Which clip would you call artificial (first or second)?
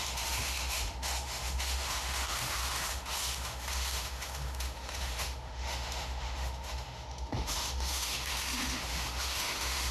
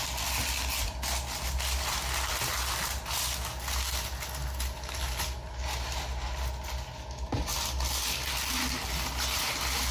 first